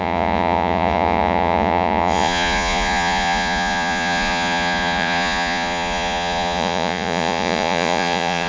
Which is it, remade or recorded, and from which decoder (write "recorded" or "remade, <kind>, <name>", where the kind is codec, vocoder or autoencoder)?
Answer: remade, vocoder, Vocos